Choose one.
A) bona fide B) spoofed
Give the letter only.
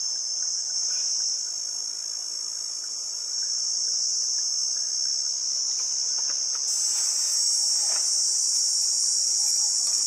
A